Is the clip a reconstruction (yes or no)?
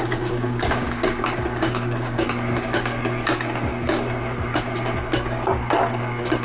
yes